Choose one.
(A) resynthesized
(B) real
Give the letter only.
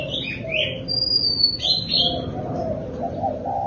B